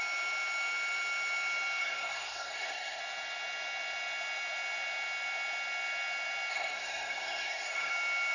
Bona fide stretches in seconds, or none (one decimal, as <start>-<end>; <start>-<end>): 0.0-1.8; 3.0-6.5; 7.9-8.3